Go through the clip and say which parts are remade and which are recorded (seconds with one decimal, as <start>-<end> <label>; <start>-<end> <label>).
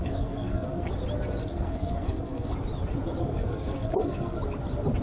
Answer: 0.0-0.9 remade; 0.9-1.4 recorded; 1.4-2.5 remade; 2.5-3.2 recorded; 3.2-4.4 remade; 4.4-5.0 recorded